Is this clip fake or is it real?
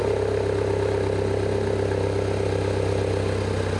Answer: real